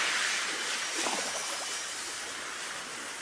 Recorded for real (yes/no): yes